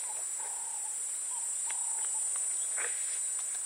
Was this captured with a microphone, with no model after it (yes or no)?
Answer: yes